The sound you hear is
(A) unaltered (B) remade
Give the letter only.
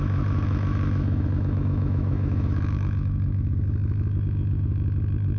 B